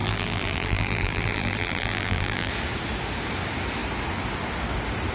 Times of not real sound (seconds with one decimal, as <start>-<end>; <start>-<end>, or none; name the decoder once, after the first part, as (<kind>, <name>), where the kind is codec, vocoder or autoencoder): 0.0-2.5 (vocoder, BigVGAN v2)